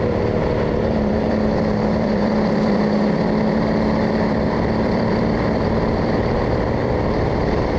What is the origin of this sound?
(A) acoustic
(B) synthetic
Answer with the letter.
B